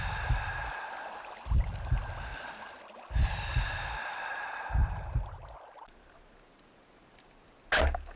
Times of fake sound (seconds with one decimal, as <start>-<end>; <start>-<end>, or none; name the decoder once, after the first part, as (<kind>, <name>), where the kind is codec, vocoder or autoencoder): none